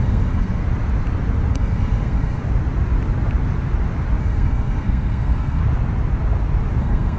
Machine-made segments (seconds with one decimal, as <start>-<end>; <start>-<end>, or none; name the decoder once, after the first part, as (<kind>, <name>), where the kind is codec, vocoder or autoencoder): 0.0-0.6 (codec, SNAC); 1.5-2.4; 4.2-5.6; 6.8-7.2